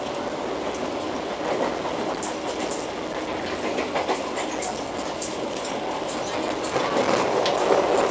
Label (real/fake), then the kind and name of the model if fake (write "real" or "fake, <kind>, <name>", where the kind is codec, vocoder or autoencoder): real